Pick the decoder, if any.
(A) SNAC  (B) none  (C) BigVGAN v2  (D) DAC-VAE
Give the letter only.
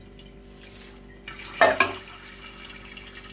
B